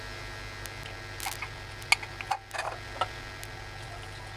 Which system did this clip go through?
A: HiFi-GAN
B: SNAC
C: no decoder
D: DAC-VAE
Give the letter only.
C